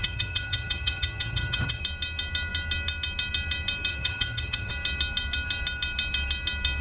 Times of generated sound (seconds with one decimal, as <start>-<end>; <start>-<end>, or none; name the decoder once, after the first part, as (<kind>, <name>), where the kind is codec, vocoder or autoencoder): 0.0-1.8 (vocoder, HiFi-GAN); 3.9-4.7